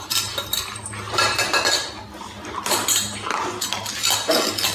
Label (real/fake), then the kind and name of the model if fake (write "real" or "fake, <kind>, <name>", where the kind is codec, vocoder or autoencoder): real